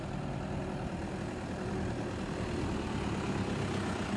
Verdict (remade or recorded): remade